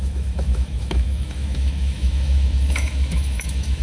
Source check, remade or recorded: remade